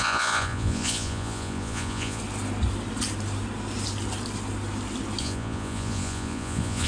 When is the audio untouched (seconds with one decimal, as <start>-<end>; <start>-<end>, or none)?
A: 2.2-5.2